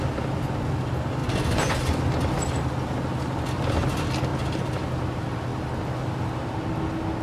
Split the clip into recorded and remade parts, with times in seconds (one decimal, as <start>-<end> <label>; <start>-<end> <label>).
0.0-7.2 recorded